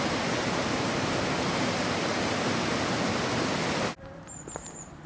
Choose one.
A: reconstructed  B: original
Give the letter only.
B